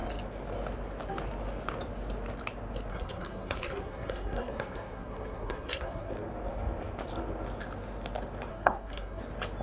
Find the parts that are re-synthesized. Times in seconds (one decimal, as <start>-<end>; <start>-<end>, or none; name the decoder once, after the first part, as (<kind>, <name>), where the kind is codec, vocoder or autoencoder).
2.9-6.1 (codec, SNAC); 8.5-9.2